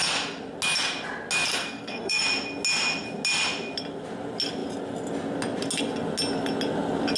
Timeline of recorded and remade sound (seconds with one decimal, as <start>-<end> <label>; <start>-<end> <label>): 0.0-1.6 recorded; 1.6-2.2 remade; 2.2-7.2 recorded